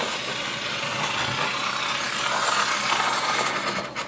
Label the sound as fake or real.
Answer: real